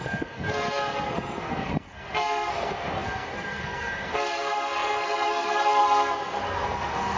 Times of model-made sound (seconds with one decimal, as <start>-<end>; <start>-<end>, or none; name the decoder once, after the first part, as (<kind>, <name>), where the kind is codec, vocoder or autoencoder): 0.0-7.2 (codec, SNAC)